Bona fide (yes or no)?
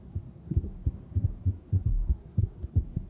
no